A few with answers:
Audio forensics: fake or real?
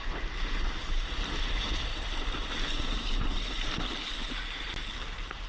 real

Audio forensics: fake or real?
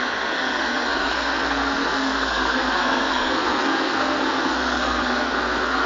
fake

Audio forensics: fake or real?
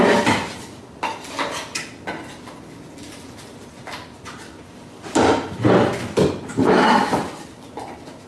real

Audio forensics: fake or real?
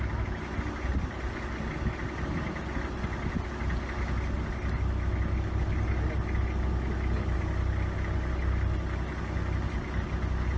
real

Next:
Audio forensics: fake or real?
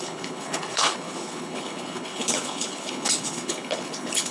fake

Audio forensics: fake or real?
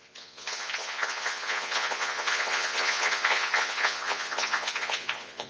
fake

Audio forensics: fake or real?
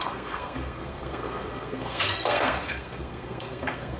fake